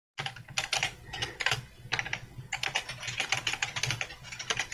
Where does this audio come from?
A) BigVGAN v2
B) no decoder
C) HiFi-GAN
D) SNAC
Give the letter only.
B